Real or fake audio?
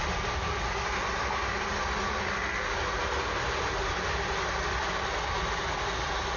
real